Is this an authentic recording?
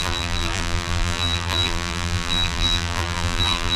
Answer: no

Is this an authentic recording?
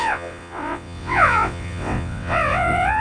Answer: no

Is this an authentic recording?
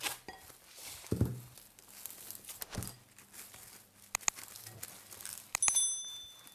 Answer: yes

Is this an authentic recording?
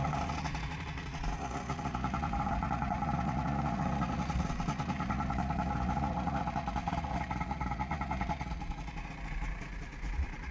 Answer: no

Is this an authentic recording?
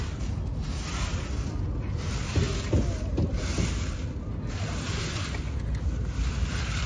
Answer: yes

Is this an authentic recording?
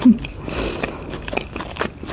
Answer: yes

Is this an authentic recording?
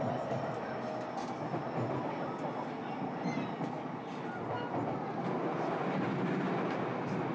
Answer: yes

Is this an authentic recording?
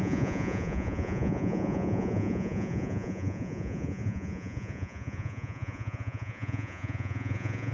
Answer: no